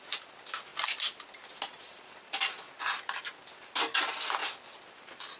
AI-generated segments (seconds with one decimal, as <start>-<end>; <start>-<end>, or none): none